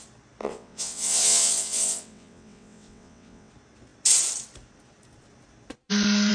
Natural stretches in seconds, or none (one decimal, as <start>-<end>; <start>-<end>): 0.0-0.4; 3.5-6.3